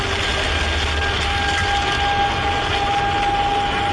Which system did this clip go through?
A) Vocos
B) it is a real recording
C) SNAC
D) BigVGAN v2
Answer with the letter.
B